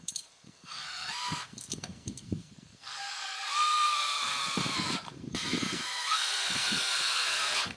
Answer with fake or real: fake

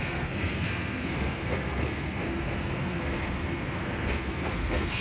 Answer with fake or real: fake